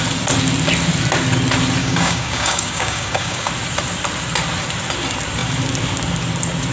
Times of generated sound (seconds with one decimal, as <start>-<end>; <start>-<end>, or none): 1.8-3.5